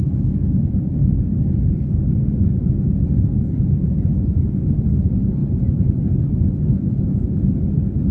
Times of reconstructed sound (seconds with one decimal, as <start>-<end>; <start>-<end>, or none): none